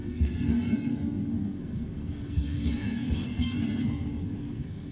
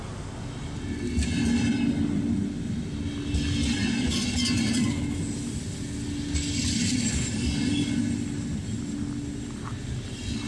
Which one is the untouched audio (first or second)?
second